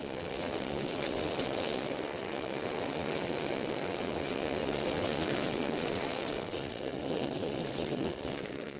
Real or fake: fake